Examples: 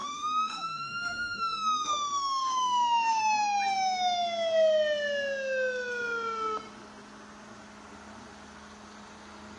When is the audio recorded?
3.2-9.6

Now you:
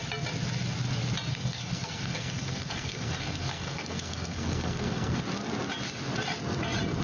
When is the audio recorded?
0.0-1.3; 5.2-7.0

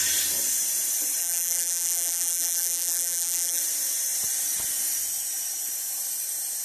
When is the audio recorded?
0.0-1.2; 3.6-6.6

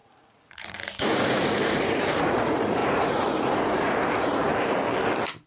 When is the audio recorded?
4.5-5.5

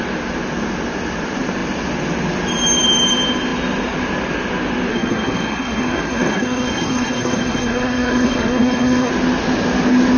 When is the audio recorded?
0.0-4.9; 9.1-10.2